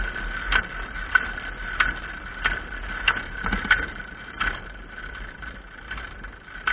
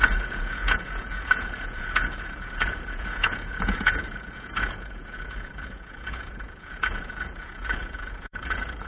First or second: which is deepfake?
second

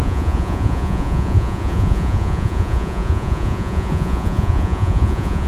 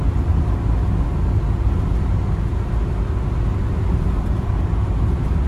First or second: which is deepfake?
first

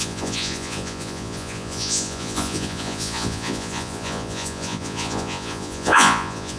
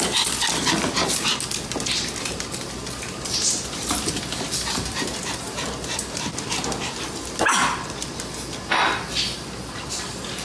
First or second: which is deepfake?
first